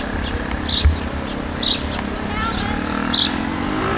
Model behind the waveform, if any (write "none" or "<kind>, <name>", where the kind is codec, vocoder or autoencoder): none